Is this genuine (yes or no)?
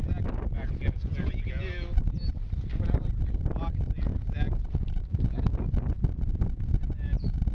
yes